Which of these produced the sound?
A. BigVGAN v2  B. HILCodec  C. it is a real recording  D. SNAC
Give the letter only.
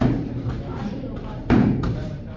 A